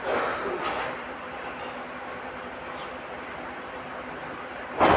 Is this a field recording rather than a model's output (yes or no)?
yes